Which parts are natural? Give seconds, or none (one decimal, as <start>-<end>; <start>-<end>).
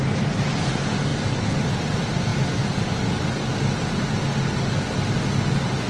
0.0-5.9